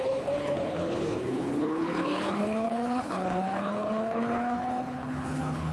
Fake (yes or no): yes